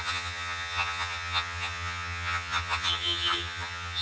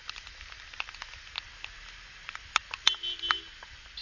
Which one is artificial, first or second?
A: first